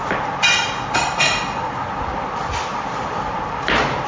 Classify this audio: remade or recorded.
recorded